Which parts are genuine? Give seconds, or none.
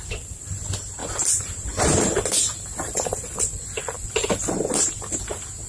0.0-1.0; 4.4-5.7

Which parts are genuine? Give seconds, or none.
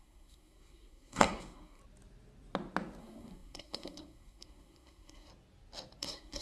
1.8-3.0; 5.3-6.0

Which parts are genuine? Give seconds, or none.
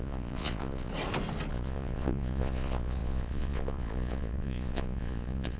0.9-1.5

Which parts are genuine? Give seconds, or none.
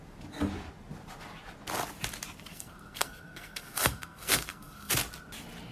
0.0-2.5; 4.9-5.7